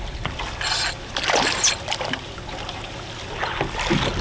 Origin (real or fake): real